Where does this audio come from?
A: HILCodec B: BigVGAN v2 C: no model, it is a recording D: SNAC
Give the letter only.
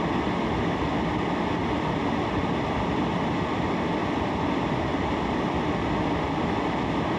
C